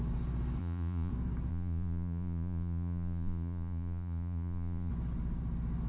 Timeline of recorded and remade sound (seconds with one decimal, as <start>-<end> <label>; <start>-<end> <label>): 0.0-0.6 recorded; 0.6-1.1 remade; 1.1-1.5 recorded; 1.5-4.9 remade; 4.9-5.9 recorded